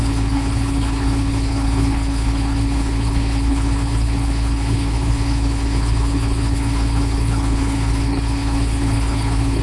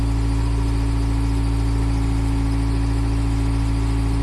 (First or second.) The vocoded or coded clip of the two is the first